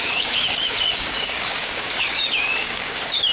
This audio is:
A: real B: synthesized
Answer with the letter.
B